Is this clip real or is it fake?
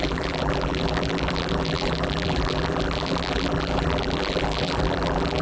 fake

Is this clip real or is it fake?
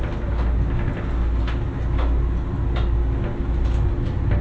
real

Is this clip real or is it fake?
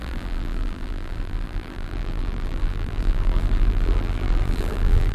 fake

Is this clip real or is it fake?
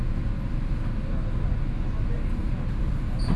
real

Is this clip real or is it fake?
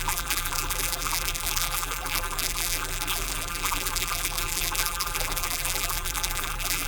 fake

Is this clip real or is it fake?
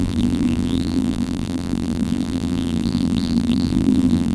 fake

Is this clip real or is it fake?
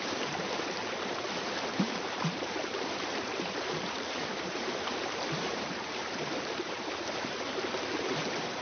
fake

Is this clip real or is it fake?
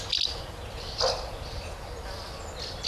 real